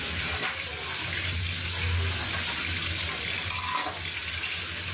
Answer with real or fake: real